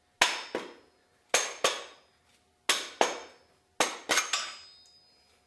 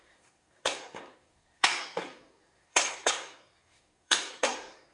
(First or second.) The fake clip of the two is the second